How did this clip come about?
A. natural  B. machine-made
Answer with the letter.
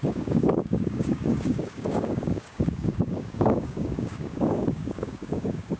B